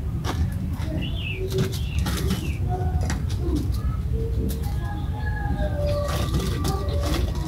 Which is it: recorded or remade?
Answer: recorded